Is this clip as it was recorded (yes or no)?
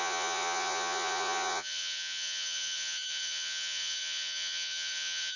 no